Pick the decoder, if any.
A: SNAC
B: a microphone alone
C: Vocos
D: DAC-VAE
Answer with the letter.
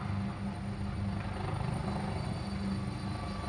B